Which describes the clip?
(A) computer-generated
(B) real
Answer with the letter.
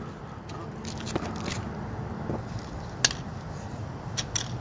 B